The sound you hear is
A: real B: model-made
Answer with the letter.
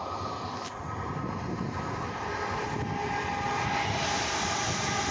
A